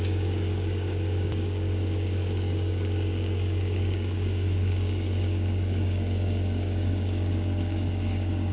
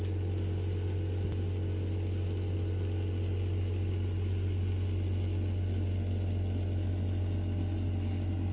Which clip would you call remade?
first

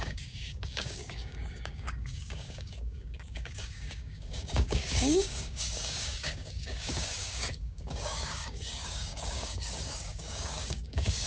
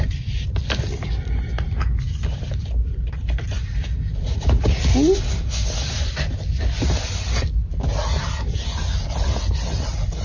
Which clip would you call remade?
first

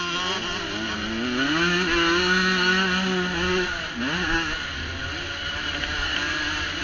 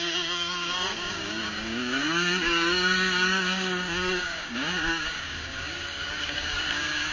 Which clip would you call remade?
second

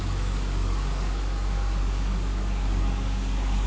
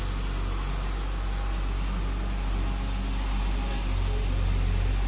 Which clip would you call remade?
first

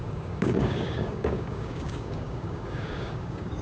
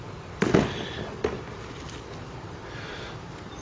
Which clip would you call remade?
first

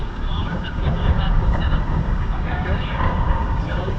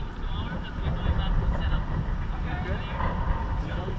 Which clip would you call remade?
first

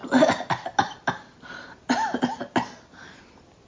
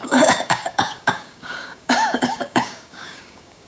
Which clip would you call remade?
second